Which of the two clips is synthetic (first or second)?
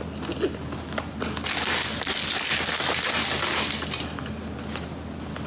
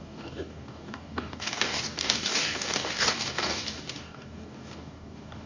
second